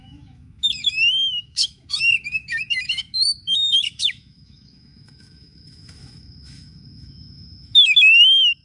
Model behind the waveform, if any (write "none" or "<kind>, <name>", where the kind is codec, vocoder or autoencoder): autoencoder, DAC-VAE